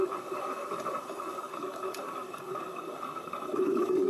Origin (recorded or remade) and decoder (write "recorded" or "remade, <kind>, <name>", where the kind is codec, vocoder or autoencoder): remade, codec, DAC